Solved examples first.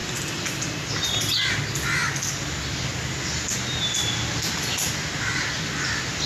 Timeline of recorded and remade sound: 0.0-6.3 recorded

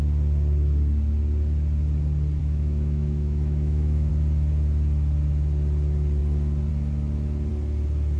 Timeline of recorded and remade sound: 0.0-2.4 recorded; 2.4-4.1 remade; 4.1-8.2 recorded

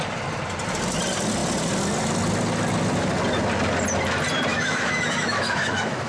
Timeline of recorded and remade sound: 0.0-4.5 recorded; 4.5-6.1 remade

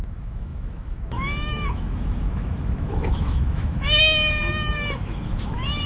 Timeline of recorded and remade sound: 0.0-5.9 remade

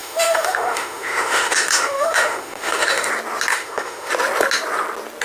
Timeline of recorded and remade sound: 0.0-3.1 remade; 3.1-3.5 recorded; 3.5-4.1 remade; 4.1-5.2 recorded

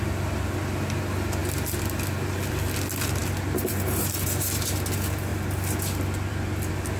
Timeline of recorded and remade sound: 0.0-7.0 recorded